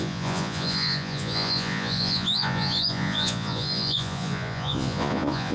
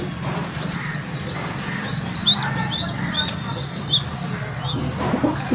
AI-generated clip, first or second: first